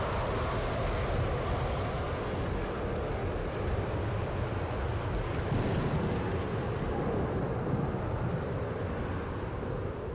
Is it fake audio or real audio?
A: real